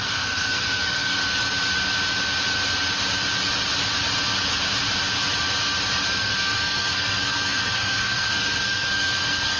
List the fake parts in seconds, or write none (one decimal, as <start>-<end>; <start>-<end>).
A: 0.0-1.2; 6.1-9.6